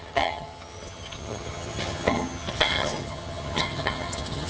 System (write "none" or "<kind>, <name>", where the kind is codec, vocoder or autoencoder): vocoder, HiFi-GAN